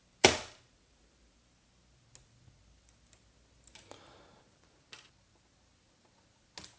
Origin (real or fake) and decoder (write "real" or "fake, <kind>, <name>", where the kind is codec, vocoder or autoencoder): real